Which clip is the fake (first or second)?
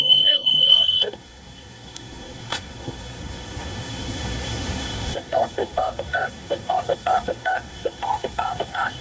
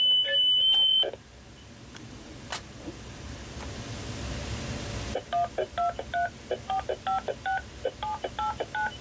first